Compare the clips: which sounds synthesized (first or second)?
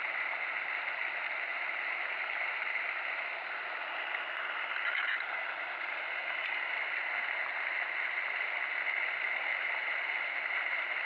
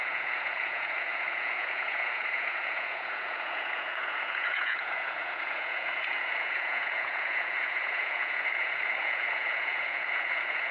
second